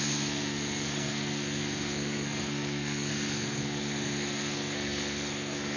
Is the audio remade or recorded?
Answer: remade